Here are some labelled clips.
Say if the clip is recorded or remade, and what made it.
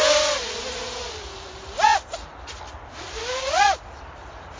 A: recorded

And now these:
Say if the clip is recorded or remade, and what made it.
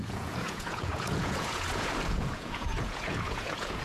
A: remade, vocoder, Vocos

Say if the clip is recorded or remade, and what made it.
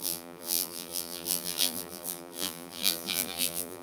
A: remade, vocoder, BigVGAN v2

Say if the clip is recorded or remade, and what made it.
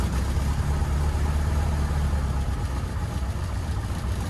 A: recorded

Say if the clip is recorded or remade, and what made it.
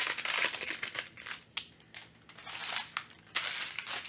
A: recorded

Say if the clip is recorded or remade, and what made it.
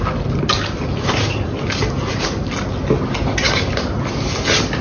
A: recorded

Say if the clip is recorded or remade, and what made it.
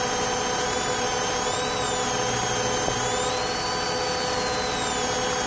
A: recorded